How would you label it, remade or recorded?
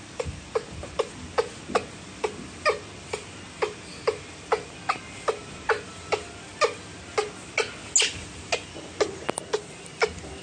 recorded